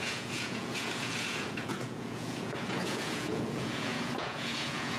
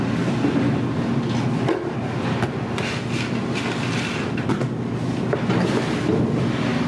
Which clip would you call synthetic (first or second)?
first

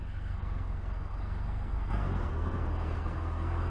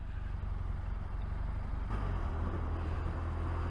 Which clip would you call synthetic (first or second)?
first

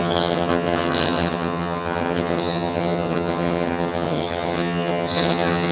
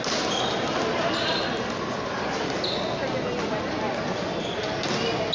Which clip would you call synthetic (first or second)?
first